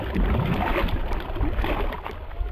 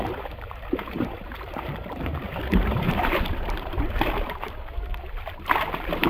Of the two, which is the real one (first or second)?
first